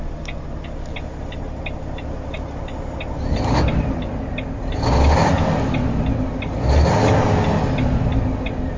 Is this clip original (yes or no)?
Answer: yes